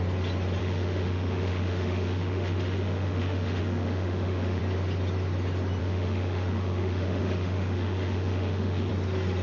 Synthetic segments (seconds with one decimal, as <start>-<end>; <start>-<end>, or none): 0.6-4.6; 5.8-8.9